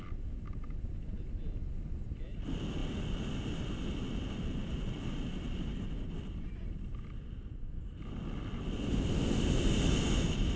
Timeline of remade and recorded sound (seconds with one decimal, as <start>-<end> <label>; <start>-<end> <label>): 0.0-10.6 recorded